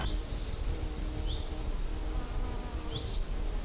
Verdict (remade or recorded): recorded